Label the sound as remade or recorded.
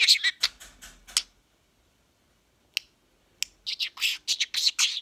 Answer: recorded